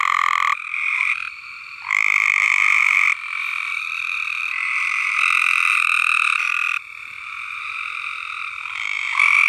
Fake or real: fake